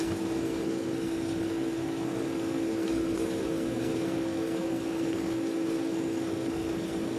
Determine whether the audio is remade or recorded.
remade